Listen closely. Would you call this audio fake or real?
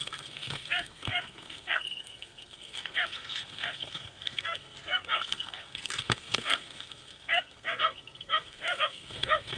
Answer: fake